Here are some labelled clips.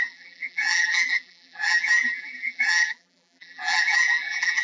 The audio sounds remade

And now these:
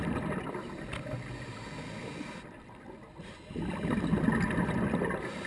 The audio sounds recorded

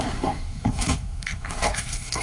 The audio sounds remade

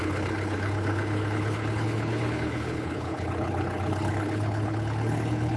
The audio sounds remade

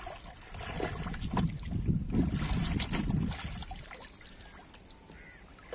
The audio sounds recorded